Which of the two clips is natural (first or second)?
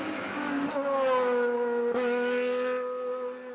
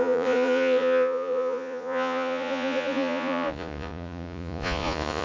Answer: first